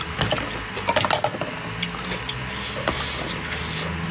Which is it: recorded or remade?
recorded